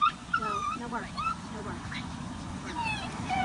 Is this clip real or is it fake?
fake